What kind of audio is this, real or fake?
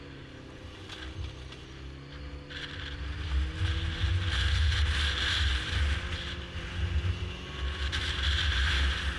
real